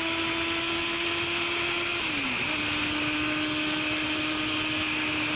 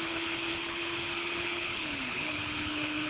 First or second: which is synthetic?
second